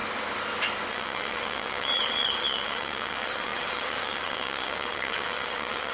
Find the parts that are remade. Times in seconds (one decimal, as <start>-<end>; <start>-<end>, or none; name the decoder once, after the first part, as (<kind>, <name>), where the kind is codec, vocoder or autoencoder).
0.9-5.9 (vocoder, WaveNeXt)